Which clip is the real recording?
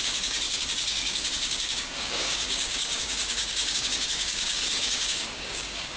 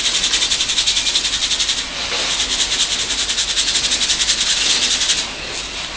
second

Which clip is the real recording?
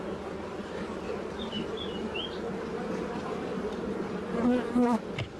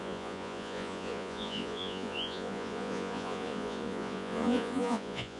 first